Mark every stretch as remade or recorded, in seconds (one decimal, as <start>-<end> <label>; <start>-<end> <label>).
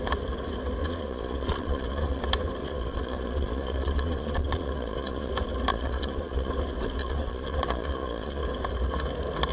0.0-0.8 recorded; 0.8-2.2 remade; 2.2-2.6 recorded; 2.6-5.3 remade; 5.3-5.7 recorded; 5.7-6.5 remade; 6.5-7.0 recorded; 7.0-8.4 remade; 8.4-9.5 recorded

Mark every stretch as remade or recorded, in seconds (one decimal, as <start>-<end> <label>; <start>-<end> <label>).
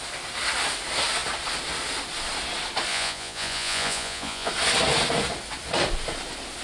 0.0-2.9 recorded; 2.9-4.5 remade; 4.5-6.6 recorded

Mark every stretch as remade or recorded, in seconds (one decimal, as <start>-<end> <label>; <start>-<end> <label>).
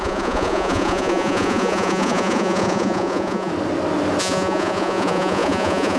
0.0-3.5 remade; 3.5-4.2 recorded; 4.2-6.0 remade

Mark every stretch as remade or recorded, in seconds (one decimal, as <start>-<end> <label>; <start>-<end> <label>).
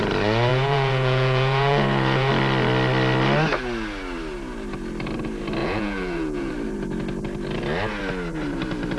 0.0-0.5 recorded; 0.5-2.3 remade; 2.3-5.6 recorded; 5.6-6.5 remade; 6.5-9.0 recorded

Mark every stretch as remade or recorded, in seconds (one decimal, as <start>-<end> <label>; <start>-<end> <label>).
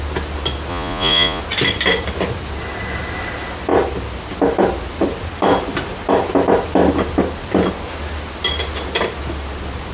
0.0-0.7 recorded; 0.7-1.4 remade; 1.4-9.9 recorded